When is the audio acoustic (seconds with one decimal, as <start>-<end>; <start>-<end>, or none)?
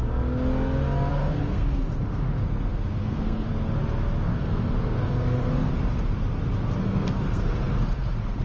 0.0-1.1; 3.5-4.2; 5.7-6.8